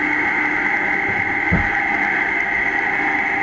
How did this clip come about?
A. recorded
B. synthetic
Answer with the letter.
A